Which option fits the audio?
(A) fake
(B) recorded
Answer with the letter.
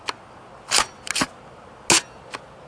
B